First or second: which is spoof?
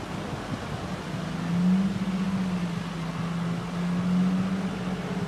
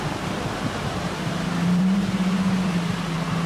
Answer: second